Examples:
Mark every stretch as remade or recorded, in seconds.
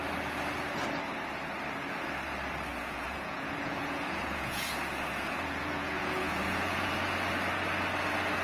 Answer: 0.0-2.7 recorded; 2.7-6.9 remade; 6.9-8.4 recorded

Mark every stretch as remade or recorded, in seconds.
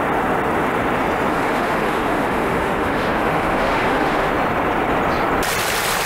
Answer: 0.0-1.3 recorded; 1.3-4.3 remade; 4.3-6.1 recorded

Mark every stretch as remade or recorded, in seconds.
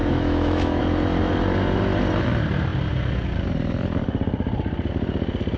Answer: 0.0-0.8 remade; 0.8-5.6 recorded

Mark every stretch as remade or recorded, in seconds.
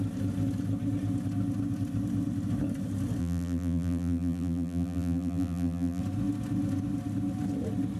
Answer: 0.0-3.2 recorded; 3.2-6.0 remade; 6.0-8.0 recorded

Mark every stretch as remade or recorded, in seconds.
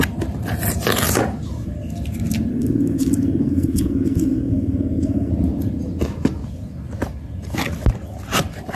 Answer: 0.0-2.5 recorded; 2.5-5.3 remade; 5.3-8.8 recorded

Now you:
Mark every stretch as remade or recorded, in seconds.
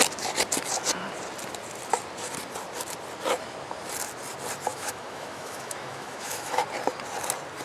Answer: 0.0-4.7 recorded; 4.7-6.6 remade; 6.6-7.6 recorded